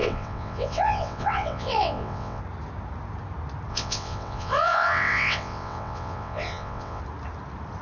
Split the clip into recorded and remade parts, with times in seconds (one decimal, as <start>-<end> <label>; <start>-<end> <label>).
0.0-2.4 remade; 2.4-3.7 recorded; 3.7-7.0 remade; 7.0-7.8 recorded